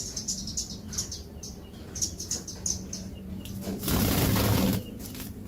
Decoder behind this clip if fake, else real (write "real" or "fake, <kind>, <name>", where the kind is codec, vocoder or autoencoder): real